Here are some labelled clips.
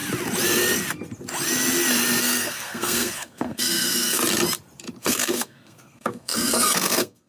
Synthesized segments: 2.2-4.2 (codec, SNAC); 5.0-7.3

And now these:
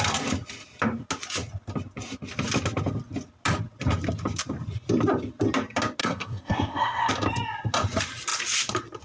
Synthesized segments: 6.0-7.1 (codec, SNAC)

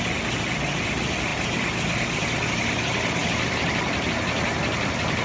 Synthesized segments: none

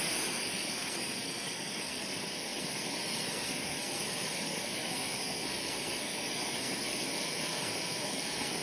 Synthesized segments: 0.0-8.6 (codec, SNAC)

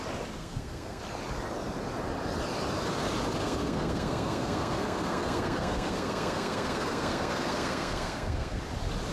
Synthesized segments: 0.4-1.0 (codec, SNAC); 3.4-8.6

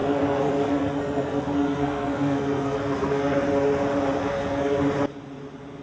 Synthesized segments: 0.0-3.4 (codec, SNAC); 4.2-4.8